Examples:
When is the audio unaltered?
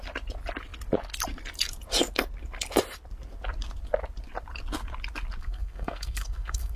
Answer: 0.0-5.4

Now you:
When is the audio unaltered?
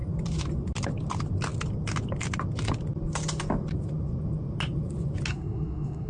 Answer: 0.0-5.3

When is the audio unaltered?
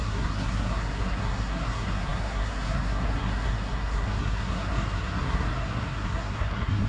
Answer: none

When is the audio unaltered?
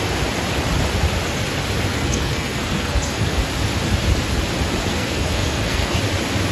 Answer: 0.0-1.9; 3.4-4.9; 6.0-6.5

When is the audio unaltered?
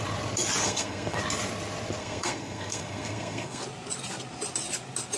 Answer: 0.0-0.6; 1.2-2.0; 3.6-5.2